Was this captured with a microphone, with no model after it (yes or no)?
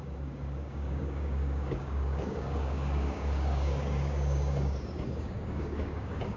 no